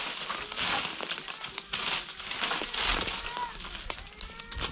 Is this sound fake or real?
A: real